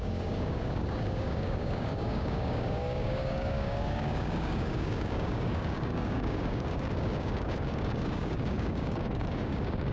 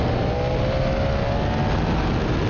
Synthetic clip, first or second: first